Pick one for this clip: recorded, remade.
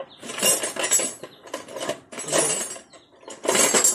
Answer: recorded